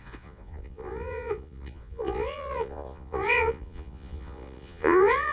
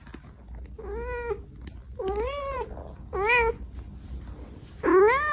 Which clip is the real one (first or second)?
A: second